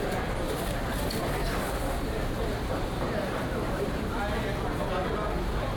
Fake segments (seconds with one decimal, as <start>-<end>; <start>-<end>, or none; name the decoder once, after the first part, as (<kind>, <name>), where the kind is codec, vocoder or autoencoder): 1.4-4.2 (vocoder, BigVGAN v2)